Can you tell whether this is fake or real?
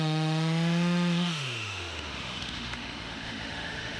fake